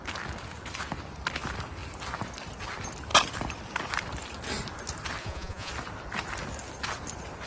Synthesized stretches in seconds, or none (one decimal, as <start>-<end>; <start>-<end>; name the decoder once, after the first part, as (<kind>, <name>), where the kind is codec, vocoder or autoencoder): 5.2-5.7 (vocoder, Vocos)